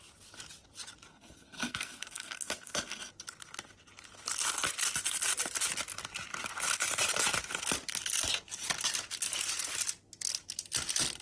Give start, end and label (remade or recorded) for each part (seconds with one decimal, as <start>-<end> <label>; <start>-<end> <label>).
0.0-1.1 recorded; 1.1-3.1 remade; 3.1-11.2 recorded